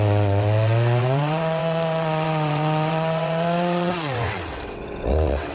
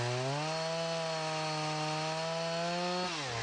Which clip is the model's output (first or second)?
first